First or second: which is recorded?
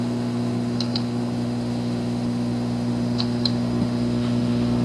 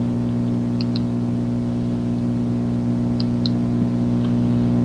second